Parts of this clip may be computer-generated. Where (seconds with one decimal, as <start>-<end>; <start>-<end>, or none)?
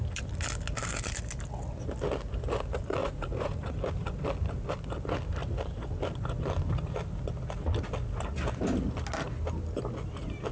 3.0-3.7